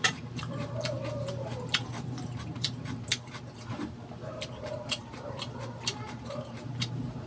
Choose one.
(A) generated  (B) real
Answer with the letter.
A